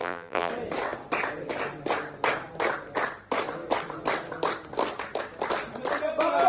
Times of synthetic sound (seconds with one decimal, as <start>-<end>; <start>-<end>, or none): 0.0-0.5